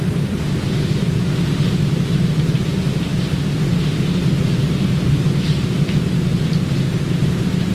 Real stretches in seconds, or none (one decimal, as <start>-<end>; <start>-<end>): 3.1-5.4

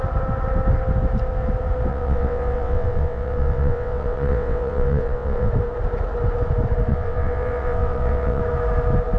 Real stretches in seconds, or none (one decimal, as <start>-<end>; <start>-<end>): 0.0-1.9; 5.5-6.9; 8.4-9.2

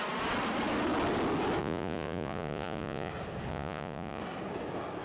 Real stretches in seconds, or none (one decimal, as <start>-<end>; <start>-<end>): 0.0-1.6; 3.1-3.5; 4.2-5.0